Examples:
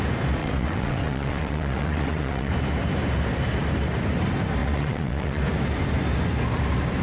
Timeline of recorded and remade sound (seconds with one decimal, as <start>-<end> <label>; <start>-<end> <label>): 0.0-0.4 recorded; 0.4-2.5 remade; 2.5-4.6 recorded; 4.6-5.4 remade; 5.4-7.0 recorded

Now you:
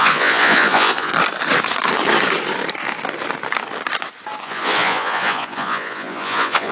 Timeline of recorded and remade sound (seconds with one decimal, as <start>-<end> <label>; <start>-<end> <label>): 0.0-1.1 remade; 1.1-4.4 recorded; 4.4-6.7 remade

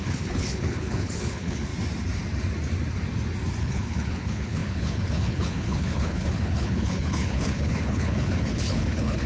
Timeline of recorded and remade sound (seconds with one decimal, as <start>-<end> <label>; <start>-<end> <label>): 0.0-1.7 remade; 1.7-3.6 recorded; 3.6-9.3 remade

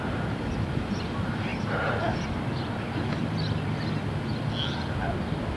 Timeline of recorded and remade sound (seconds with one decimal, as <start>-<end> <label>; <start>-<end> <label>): 0.0-5.6 recorded

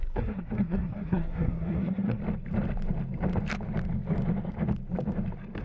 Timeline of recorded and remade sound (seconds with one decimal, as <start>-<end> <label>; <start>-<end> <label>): 0.0-2.2 remade; 2.2-5.6 recorded

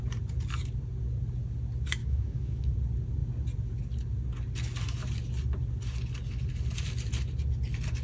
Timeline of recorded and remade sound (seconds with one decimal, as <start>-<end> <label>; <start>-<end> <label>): 0.0-2.0 recorded; 2.0-2.7 remade; 2.7-8.0 recorded

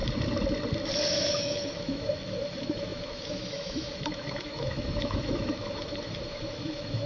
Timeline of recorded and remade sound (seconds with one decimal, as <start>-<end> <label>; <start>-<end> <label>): 0.0-1.1 recorded; 1.1-7.1 remade

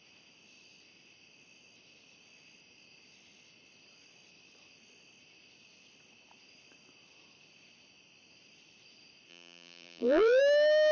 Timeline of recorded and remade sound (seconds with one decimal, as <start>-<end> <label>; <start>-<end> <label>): 0.0-9.3 recorded; 9.3-10.4 remade; 10.4-10.9 recorded